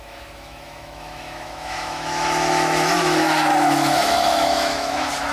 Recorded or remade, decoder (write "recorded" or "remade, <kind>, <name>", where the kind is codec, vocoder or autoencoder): remade, autoencoder, DAC-VAE